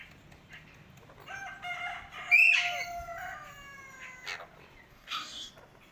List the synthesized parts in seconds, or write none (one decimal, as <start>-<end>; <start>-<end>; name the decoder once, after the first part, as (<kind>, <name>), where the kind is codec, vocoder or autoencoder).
4.9-5.5 (codec, DAC)